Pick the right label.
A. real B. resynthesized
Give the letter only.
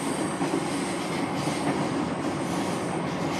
A